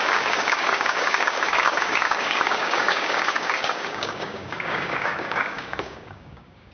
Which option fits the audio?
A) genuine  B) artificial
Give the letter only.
B